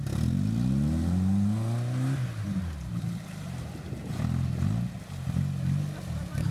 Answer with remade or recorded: recorded